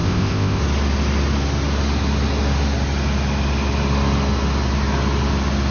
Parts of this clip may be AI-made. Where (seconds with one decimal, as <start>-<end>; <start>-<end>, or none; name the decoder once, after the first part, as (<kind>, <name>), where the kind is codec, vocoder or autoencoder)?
0.0-0.6 (codec, ZipCodec)